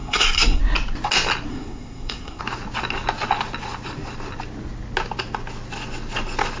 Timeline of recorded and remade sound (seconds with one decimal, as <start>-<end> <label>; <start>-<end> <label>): 0.0-0.6 remade; 0.6-1.5 recorded; 1.5-2.4 remade; 2.4-6.6 recorded